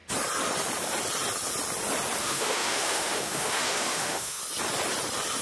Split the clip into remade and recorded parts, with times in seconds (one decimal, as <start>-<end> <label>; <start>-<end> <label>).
0.0-2.2 recorded; 2.2-4.4 remade; 4.4-5.4 recorded